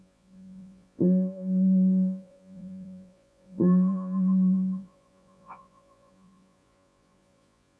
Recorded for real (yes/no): no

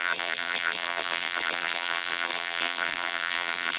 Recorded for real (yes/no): no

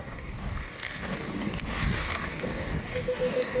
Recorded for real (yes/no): no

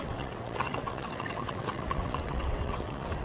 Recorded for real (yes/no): no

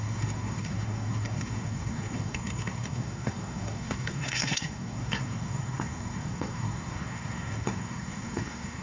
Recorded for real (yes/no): no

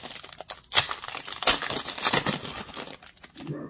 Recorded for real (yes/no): yes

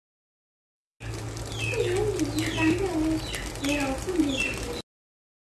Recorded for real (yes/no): yes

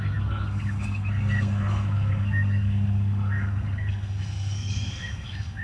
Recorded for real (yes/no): no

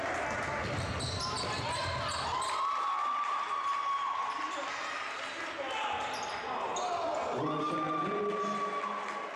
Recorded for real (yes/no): yes